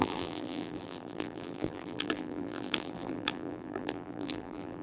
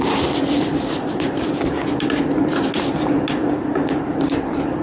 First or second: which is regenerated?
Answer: first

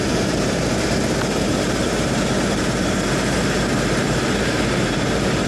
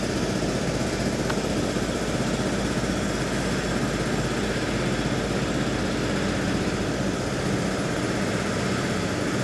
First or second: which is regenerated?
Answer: first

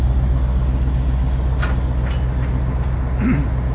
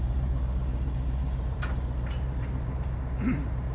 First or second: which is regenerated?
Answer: second